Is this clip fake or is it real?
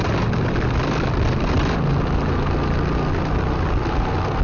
real